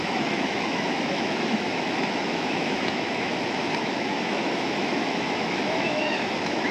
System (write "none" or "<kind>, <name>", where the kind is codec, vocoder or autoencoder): autoencoder, DAC-VAE